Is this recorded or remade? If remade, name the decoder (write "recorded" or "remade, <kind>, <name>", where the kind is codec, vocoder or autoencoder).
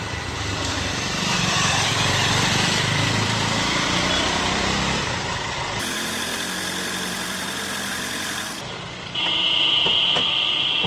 remade, vocoder, BigVGAN v2